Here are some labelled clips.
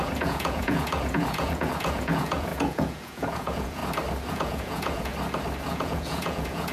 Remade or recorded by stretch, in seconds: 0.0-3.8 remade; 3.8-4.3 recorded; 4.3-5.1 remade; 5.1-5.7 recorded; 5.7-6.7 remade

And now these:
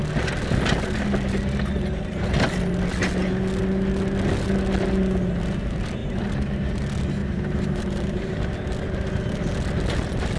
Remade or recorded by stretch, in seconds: 0.0-6.0 recorded; 6.0-6.7 remade; 6.7-7.2 recorded; 7.2-8.5 remade; 8.5-10.4 recorded

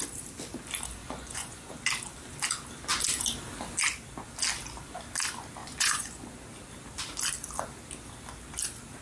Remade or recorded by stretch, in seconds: 0.0-1.0 recorded; 1.0-1.7 remade; 1.7-5.6 recorded; 5.6-6.3 remade; 6.3-9.0 recorded